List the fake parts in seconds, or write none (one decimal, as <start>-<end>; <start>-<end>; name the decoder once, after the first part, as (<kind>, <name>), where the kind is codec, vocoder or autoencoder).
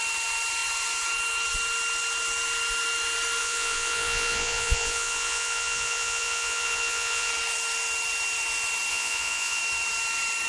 3.4-7.3 (vocoder, Vocos); 8.9-9.6